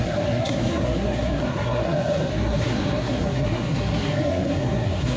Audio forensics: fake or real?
fake